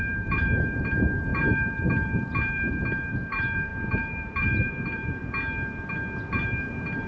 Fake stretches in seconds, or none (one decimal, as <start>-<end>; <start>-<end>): 0.0-5.2; 6.3-7.1